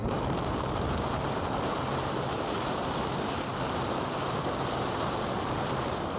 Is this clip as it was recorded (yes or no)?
no